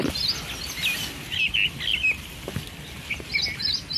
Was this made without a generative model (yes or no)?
yes